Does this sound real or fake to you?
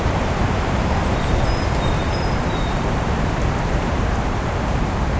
fake